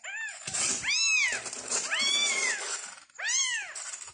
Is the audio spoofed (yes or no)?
no